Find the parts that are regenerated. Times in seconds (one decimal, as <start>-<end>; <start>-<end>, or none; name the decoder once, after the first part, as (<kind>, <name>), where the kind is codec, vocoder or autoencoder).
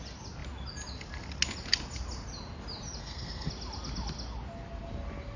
3.0-3.5 (codec, SNAC)